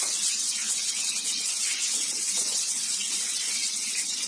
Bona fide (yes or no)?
no